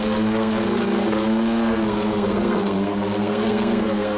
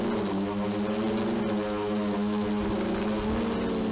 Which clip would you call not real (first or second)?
first